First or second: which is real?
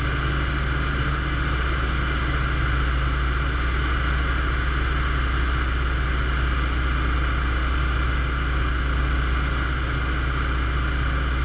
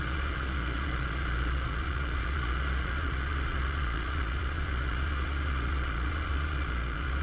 first